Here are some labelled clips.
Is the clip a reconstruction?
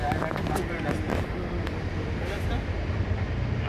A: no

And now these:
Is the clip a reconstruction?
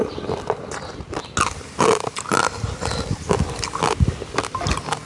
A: no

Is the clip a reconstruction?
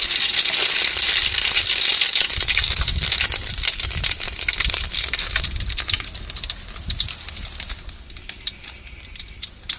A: no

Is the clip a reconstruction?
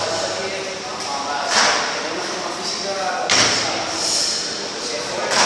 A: no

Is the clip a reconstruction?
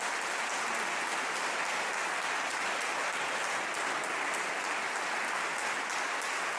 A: no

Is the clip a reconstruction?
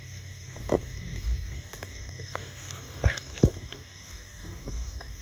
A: yes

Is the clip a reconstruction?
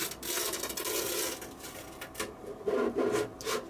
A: no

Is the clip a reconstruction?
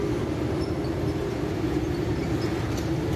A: no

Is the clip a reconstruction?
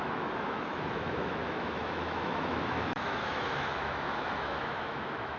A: yes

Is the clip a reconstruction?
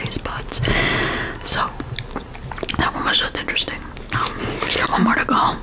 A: no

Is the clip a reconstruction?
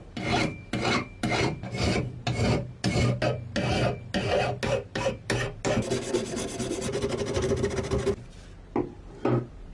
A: no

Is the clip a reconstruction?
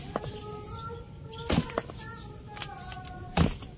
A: no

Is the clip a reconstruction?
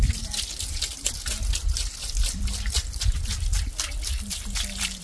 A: no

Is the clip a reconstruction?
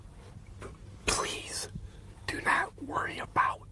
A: no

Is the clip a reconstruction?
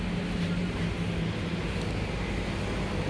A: no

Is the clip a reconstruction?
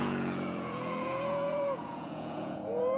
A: yes